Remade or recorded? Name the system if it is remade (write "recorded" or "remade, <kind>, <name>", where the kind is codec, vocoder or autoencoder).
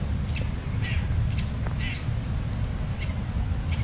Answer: recorded